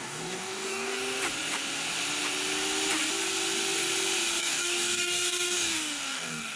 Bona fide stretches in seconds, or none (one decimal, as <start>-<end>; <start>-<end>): 1.0-4.4